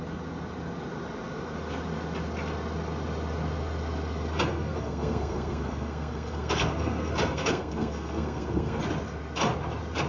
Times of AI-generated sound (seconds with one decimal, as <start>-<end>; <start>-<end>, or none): 4.5-8.8